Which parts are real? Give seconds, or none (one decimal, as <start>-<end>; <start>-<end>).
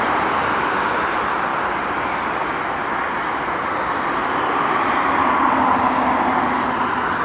0.0-2.8; 4.4-7.2